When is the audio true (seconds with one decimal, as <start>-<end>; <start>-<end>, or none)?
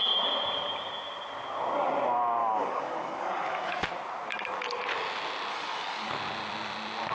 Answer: 0.0-2.4; 3.7-5.5; 6.1-7.1